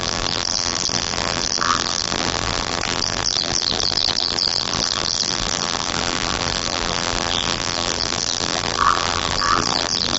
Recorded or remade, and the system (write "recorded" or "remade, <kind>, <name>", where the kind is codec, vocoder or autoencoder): remade, vocoder, BigVGAN v2